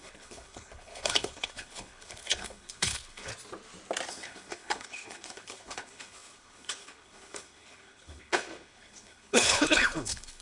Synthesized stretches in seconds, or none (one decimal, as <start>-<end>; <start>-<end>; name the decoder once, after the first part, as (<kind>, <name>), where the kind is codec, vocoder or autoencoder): 0.0-3.3 (codec, HILCodec); 4.1-10.4